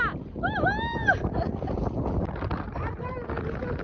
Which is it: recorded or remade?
recorded